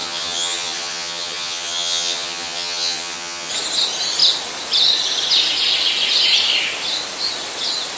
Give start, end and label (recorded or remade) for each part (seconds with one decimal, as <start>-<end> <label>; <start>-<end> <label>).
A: 0.0-3.5 remade; 3.5-8.0 recorded